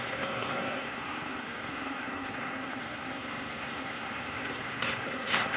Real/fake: fake